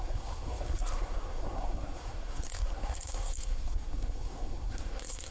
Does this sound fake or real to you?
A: fake